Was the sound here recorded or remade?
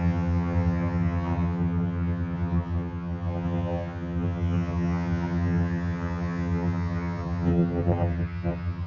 remade